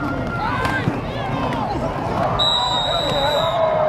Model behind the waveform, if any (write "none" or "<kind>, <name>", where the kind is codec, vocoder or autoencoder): vocoder, BigVGAN v2